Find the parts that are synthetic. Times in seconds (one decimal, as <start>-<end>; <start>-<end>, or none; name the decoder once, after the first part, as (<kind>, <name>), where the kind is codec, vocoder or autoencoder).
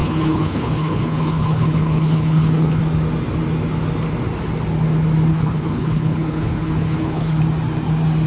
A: 0.0-2.8 (codec, HILCodec); 5.3-7.4